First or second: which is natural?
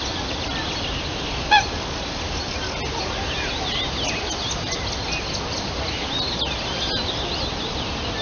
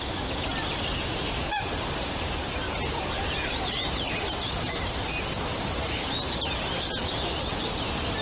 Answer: first